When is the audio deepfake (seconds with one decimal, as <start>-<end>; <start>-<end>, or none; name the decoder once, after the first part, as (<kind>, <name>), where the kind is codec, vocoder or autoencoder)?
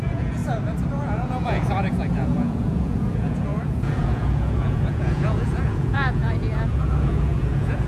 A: 0.0-0.4 (vocoder, Vocos); 1.0-7.9